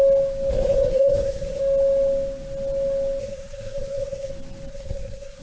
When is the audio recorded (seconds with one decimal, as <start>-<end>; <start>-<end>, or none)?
0.0-0.5; 1.6-3.2; 4.3-4.7